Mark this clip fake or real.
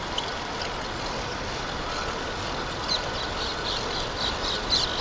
real